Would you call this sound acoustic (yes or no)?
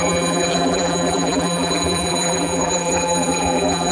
no